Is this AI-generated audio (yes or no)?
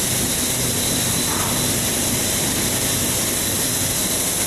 no